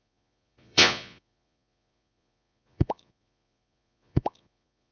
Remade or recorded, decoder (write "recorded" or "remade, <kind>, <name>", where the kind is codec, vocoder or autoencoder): remade, vocoder, Vocos